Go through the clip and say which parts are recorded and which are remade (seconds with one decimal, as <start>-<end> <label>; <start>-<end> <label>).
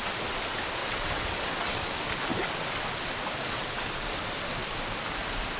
0.0-0.8 recorded; 0.8-1.8 remade; 1.8-5.6 recorded